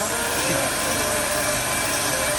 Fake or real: fake